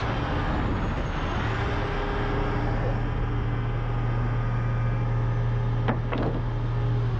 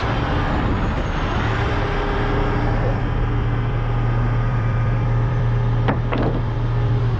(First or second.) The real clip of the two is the first